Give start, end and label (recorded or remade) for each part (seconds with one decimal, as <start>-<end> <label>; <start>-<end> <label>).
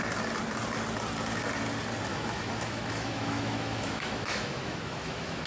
0.0-2.1 recorded; 2.1-5.5 remade